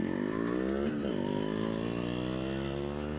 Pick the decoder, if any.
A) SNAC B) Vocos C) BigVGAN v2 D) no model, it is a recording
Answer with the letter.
D